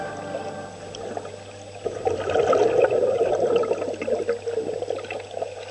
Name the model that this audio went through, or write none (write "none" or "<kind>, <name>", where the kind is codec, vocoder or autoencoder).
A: none